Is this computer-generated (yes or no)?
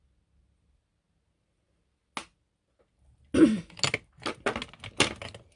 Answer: no